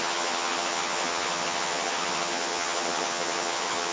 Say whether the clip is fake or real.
fake